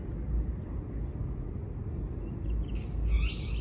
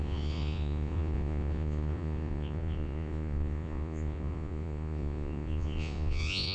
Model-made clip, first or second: second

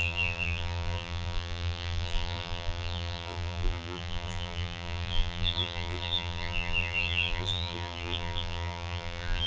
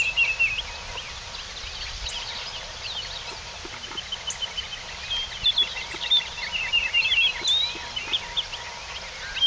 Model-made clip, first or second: first